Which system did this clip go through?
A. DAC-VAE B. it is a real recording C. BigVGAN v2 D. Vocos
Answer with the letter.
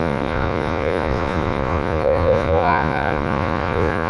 D